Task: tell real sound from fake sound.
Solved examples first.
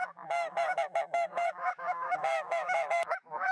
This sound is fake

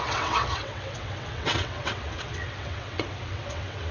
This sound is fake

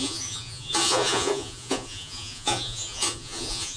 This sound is fake